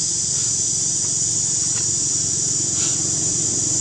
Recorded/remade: recorded